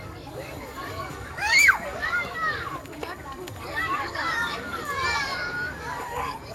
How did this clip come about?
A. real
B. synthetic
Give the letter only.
B